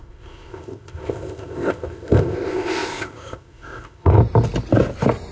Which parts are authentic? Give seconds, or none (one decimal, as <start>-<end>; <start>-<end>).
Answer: 4.2-5.3